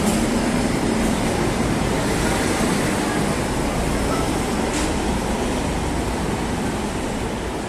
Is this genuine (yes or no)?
yes